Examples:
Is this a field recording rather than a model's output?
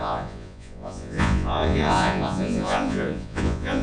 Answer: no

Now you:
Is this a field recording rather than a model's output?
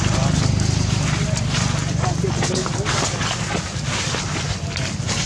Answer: yes